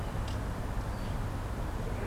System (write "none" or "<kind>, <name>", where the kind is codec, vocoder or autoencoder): none